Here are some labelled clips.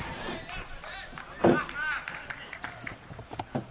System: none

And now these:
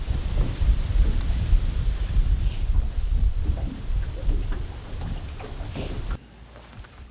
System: vocoder, BigVGAN v2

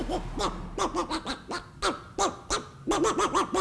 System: none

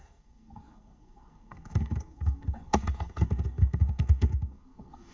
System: codec, SNAC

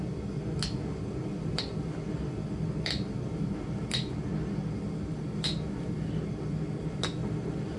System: none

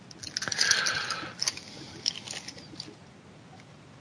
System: none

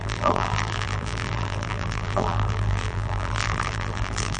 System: vocoder, BigVGAN v2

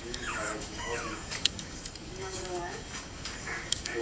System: codec, DAC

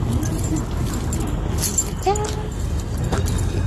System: none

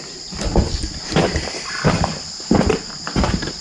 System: none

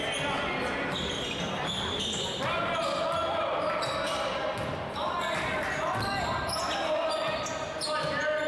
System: none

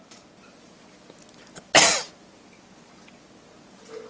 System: none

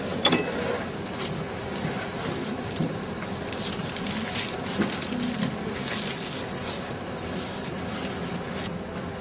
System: none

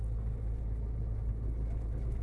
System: none